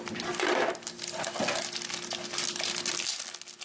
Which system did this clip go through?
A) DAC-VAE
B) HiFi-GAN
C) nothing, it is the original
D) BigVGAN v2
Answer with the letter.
C